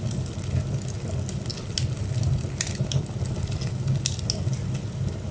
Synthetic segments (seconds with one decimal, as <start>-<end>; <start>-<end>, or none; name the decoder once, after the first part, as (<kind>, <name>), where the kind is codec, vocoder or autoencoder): 1.5-3.4 (vocoder, BigVGAN v2)